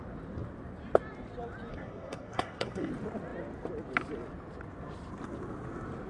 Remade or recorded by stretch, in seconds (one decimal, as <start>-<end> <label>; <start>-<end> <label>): 0.0-1.7 recorded; 1.7-2.9 remade; 2.9-6.1 recorded